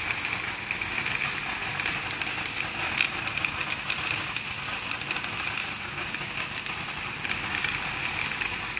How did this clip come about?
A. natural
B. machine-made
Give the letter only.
A